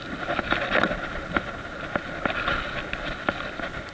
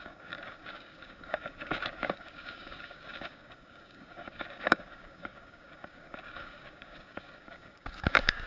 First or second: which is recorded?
first